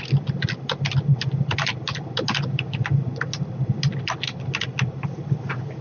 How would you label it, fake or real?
real